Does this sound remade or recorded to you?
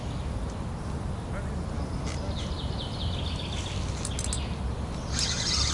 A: recorded